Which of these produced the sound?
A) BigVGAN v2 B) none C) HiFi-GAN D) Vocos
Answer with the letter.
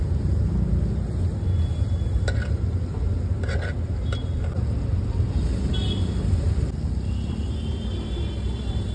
B